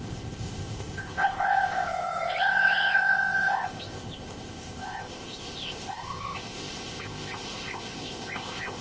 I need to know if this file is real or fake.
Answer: fake